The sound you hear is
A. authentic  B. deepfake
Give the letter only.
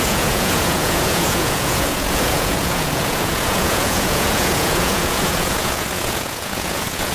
B